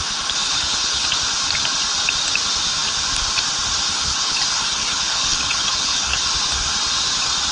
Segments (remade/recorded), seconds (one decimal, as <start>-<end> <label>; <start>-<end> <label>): 0.0-0.4 recorded; 0.4-1.1 remade; 1.1-3.9 recorded; 3.9-6.3 remade; 6.3-7.5 recorded